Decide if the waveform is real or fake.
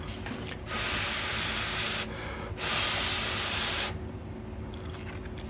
real